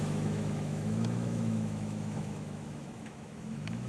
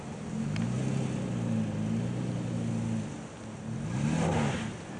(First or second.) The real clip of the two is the second